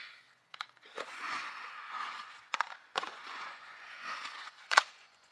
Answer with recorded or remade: remade